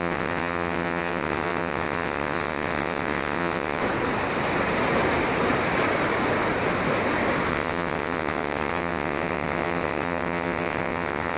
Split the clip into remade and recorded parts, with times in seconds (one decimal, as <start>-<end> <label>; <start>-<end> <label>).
0.0-3.8 remade; 3.8-7.5 recorded; 7.5-11.4 remade